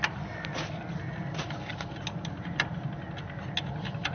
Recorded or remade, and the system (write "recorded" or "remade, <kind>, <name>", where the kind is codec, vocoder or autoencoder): recorded